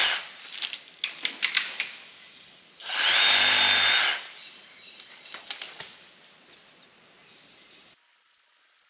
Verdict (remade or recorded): recorded